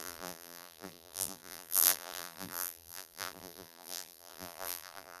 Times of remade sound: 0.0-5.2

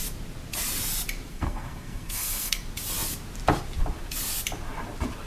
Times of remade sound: 1.3-2.6

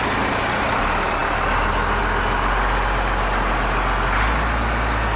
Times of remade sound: none

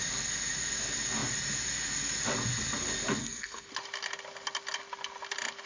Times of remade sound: 3.2-3.7